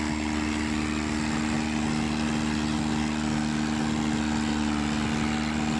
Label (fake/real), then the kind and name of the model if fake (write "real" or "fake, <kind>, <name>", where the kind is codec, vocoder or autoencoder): real